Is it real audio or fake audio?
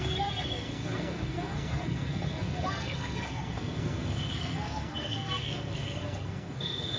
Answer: fake